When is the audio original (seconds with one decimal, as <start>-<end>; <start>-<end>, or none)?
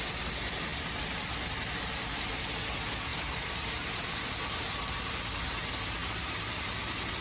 0.0-3.1; 4.7-6.0; 6.6-7.2